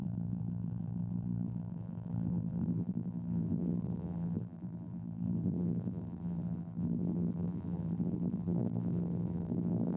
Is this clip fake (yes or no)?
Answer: yes